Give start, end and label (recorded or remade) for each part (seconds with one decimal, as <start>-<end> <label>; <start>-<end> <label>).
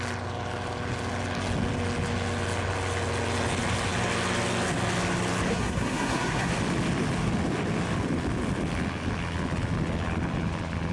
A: 0.0-5.5 recorded; 5.5-6.5 remade; 6.5-10.9 recorded